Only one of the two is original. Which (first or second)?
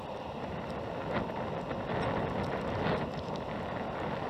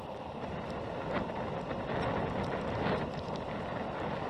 first